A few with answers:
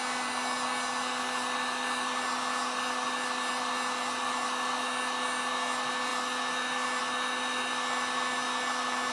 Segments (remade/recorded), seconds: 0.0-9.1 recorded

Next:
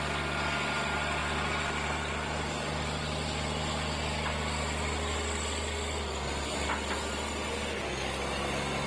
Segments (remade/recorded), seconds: 0.0-1.2 recorded; 1.2-2.1 remade; 2.1-8.9 recorded

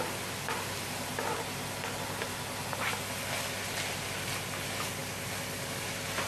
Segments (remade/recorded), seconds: 0.0-5.0 recorded; 5.0-5.7 remade; 5.7-6.3 recorded

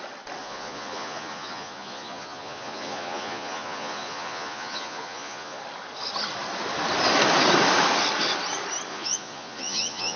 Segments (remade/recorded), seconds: 0.0-0.4 recorded; 0.4-5.6 remade; 5.6-8.9 recorded; 8.9-10.2 remade

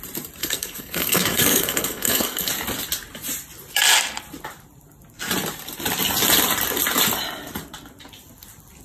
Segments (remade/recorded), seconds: 0.0-0.4 recorded; 0.4-2.5 remade; 2.5-8.8 recorded

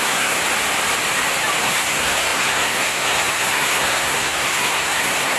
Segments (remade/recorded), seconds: 0.0-0.4 remade; 0.4-1.6 recorded; 1.6-5.4 remade

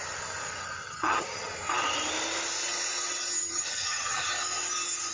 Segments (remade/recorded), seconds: 0.0-0.8 recorded; 0.8-1.5 remade; 1.5-3.4 recorded; 3.4-4.3 remade; 4.3-5.1 recorded